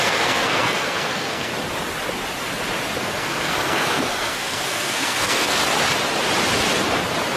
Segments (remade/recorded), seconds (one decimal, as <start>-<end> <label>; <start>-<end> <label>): 0.0-1.5 remade; 1.5-3.0 recorded; 3.0-5.6 remade; 5.6-7.4 recorded